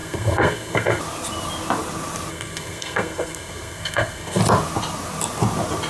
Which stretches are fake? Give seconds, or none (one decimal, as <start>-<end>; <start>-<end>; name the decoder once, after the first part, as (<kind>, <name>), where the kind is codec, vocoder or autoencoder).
0.0-1.0 (codec, SNAC); 2.3-4.4